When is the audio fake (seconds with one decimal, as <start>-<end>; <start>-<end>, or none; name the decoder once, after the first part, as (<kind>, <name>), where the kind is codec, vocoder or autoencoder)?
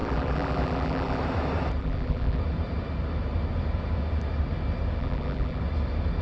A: 0.0-1.2 (vocoder, BigVGAN v2); 1.8-2.4; 5.0-5.6